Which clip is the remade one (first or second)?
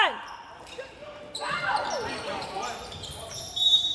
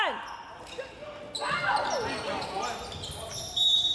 first